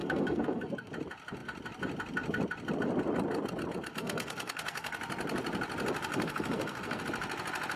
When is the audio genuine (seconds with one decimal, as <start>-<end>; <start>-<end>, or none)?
0.9-4.0; 4.9-6.1; 7.0-7.8